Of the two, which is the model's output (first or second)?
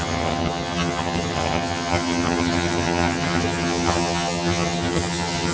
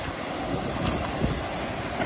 first